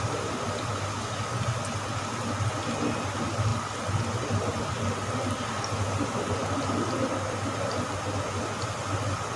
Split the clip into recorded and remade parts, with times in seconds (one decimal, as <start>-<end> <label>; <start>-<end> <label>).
0.0-9.4 recorded